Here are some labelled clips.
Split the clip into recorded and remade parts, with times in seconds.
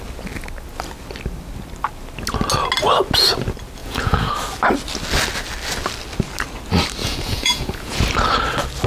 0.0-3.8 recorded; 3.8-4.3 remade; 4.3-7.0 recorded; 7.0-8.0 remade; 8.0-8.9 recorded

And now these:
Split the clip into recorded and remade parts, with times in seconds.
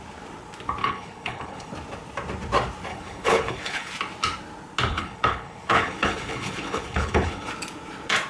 0.0-0.8 recorded; 0.8-1.7 remade; 1.7-2.9 recorded; 2.9-3.9 remade; 3.9-4.9 recorded; 4.9-7.5 remade; 7.5-8.3 recorded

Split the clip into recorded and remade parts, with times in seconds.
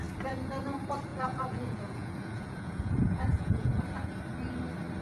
0.0-1.1 recorded; 1.1-3.8 remade; 3.8-5.0 recorded